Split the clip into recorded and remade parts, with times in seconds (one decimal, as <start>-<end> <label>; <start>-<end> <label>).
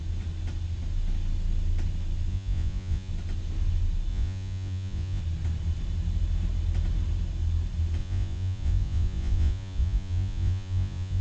0.0-2.3 recorded; 2.3-3.1 remade; 3.1-4.1 recorded; 4.1-5.2 remade; 5.2-8.0 recorded; 8.0-11.2 remade